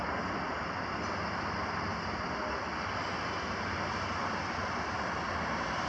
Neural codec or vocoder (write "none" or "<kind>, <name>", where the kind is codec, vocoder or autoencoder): none